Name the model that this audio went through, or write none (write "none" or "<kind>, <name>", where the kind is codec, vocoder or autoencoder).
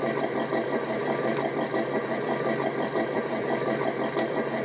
vocoder, BigVGAN v2